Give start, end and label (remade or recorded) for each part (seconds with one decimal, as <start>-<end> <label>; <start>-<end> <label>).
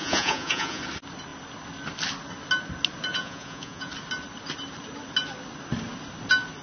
0.0-0.8 remade; 0.8-3.1 recorded; 3.1-3.9 remade; 3.9-6.6 recorded